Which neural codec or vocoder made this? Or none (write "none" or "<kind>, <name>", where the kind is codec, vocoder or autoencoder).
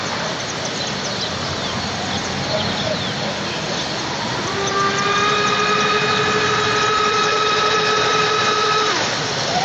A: none